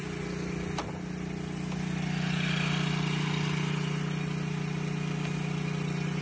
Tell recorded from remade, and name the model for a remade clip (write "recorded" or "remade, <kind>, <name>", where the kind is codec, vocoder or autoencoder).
recorded